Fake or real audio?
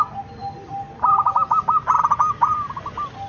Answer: real